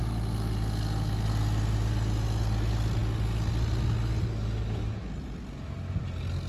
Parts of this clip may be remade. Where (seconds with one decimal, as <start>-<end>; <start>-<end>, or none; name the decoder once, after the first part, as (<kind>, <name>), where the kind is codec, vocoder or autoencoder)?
none